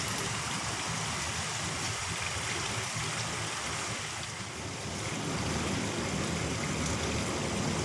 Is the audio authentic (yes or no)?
yes